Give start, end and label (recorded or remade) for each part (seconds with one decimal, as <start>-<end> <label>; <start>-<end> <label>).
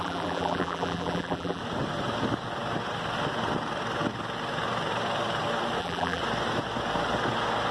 0.0-1.6 remade; 1.6-5.8 recorded; 5.8-6.2 remade; 6.2-7.7 recorded